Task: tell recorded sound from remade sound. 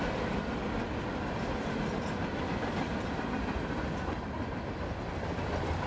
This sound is recorded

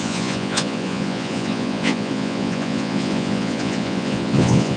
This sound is remade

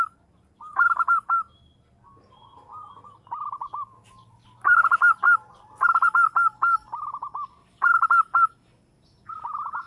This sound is recorded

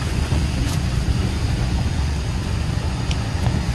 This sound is remade